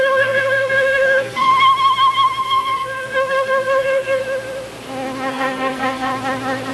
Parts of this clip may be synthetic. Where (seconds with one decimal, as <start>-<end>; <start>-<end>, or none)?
0.0-1.5; 2.4-4.2; 5.3-6.1